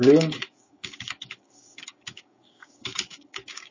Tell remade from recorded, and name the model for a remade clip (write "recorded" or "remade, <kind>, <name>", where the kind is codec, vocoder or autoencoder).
remade, codec, DAC